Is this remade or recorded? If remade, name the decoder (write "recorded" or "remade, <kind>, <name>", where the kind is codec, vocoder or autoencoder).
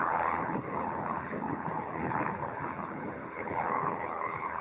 remade, codec, HILCodec